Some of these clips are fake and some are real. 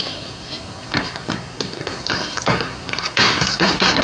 fake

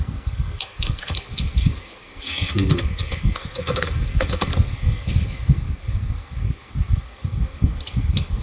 fake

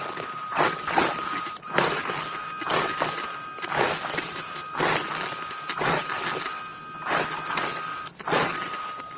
real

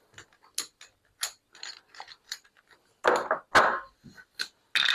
real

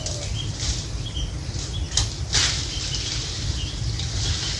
real